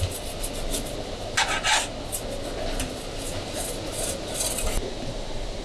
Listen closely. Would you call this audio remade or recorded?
recorded